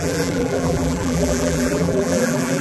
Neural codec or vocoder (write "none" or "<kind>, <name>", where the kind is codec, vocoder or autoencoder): vocoder, BigVGAN v2